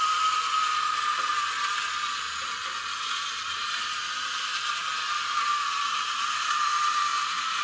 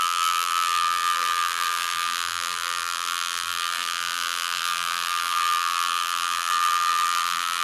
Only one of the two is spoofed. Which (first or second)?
second